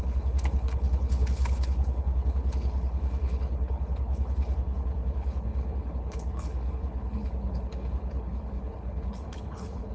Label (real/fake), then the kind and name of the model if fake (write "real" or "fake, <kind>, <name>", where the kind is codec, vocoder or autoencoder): fake, codec, HILCodec